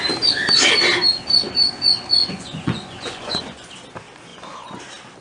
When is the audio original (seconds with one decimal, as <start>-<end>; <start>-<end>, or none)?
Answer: 0.0-2.2; 3.7-4.3; 4.8-5.2